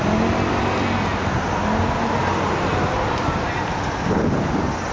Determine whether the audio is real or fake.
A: real